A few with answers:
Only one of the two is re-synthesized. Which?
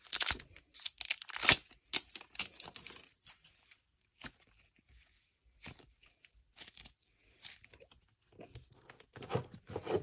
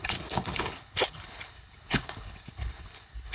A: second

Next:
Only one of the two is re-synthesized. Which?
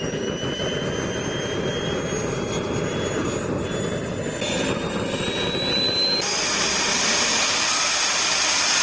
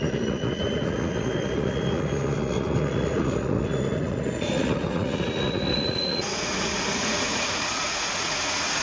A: second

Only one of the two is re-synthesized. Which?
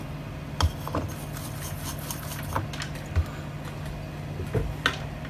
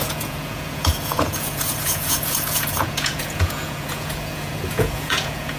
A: second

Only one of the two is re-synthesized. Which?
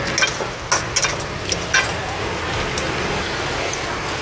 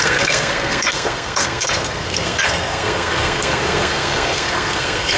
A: second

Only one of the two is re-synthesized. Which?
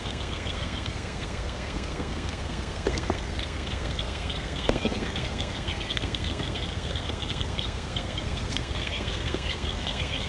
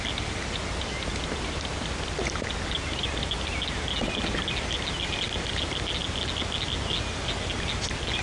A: first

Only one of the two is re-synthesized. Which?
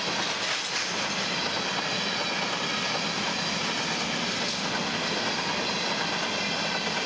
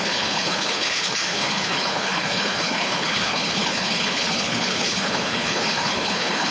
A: second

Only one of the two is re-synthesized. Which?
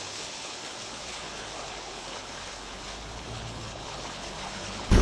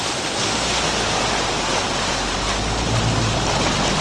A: first